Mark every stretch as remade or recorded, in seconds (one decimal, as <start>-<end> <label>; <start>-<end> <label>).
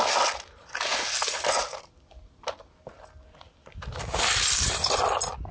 0.0-5.5 recorded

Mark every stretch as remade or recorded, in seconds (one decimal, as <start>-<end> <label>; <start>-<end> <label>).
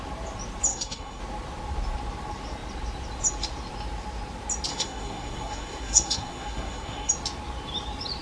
0.0-0.7 recorded; 0.7-1.2 remade; 1.2-4.7 recorded; 4.7-7.1 remade; 7.1-8.2 recorded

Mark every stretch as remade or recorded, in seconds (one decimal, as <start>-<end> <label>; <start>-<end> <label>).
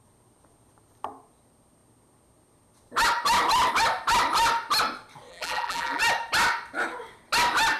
0.0-5.3 recorded; 5.3-6.0 remade; 6.0-7.8 recorded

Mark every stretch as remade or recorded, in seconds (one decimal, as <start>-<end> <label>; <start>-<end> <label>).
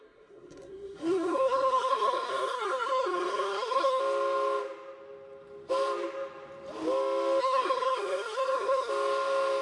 0.0-4.0 remade; 4.0-7.4 recorded; 7.4-8.9 remade; 8.9-9.6 recorded